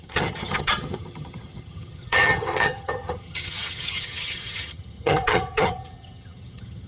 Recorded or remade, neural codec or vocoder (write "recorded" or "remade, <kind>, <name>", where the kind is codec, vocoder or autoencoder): remade, vocoder, HiFi-GAN